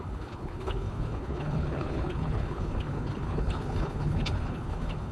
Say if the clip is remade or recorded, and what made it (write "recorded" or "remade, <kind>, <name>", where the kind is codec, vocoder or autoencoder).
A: remade, codec, HILCodec